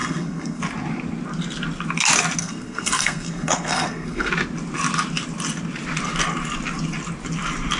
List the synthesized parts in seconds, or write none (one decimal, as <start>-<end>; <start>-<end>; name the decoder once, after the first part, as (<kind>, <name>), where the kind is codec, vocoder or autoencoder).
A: 0.0-0.6 (codec, SNAC); 2.4-4.3